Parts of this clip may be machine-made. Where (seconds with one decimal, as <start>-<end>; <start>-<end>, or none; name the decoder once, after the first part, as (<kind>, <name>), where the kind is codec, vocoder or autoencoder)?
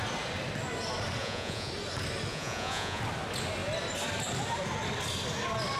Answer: 1.2-1.7 (vocoder, Vocos); 2.3-3.0